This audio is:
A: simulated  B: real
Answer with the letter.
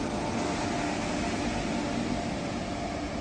B